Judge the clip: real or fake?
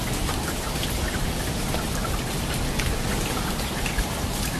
real